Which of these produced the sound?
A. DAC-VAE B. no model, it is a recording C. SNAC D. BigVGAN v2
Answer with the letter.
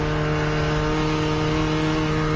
B